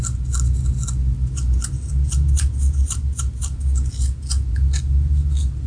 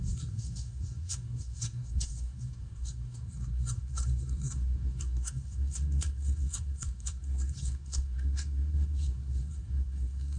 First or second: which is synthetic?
second